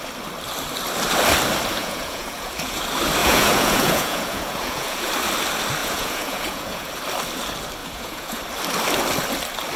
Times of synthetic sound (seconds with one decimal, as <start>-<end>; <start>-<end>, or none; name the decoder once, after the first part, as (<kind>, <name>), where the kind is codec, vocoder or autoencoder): 1.8-2.8 (vocoder, Vocos); 3.2-5.1; 5.8-6.9; 7.8-8.4